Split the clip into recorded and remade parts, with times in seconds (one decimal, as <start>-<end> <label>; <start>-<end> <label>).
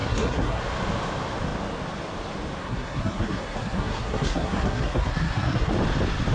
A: 0.0-0.6 remade; 0.6-2.6 recorded; 2.6-5.7 remade; 5.7-6.3 recorded